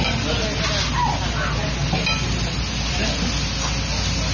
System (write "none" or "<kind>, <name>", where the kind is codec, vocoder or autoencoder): none